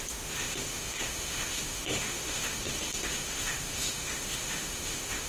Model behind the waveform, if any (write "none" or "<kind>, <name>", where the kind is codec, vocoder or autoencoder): autoencoder, DAC-VAE